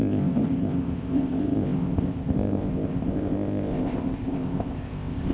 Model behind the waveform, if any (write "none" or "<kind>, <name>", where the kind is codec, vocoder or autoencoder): codec, ZipCodec